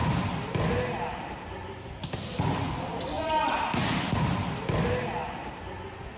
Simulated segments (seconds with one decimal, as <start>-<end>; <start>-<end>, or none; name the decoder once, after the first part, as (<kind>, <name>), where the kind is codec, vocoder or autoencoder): none